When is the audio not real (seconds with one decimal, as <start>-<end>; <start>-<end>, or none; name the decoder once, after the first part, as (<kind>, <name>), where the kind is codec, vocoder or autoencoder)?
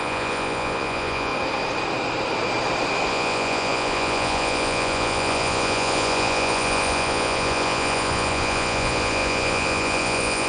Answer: 0.0-1.3 (vocoder, Vocos); 3.1-10.5